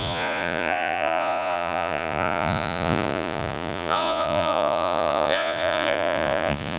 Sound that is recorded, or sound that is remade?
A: remade